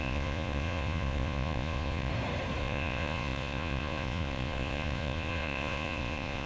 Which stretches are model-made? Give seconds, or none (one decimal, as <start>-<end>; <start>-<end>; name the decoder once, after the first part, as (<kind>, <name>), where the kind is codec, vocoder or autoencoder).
0.0-2.1 (vocoder, Vocos); 2.6-6.5